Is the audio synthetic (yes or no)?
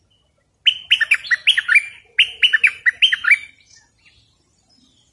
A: no